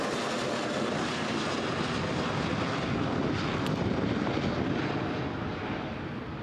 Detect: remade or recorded recorded